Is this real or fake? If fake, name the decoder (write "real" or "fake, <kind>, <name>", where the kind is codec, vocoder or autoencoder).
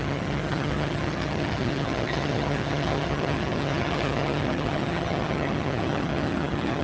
fake, vocoder, HiFi-GAN